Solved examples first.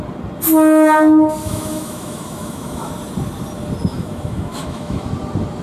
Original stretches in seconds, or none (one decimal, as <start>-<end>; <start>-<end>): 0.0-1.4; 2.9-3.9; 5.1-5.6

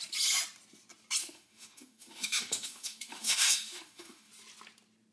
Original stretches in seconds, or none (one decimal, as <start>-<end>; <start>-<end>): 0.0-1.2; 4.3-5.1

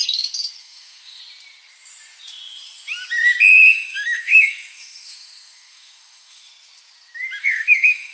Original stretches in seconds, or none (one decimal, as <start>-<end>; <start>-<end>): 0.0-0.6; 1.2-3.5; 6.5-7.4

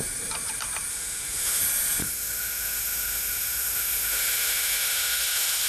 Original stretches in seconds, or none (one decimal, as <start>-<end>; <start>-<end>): 0.0-0.9; 1.6-2.0